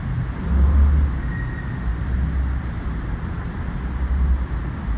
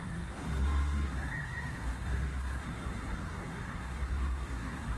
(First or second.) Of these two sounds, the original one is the first